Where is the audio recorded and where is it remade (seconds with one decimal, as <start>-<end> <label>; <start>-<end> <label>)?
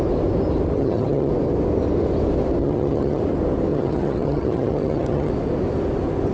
0.0-0.8 recorded; 0.8-1.3 remade; 1.3-2.6 recorded; 2.6-3.2 remade; 3.2-3.7 recorded; 3.7-5.3 remade; 5.3-6.3 recorded